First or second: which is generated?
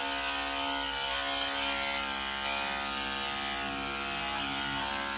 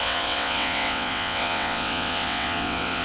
second